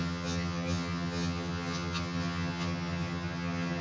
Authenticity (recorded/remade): remade